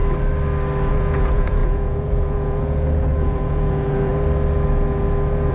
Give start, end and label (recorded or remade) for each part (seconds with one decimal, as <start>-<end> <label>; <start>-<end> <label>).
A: 0.0-0.9 recorded; 0.9-4.1 remade; 4.1-5.5 recorded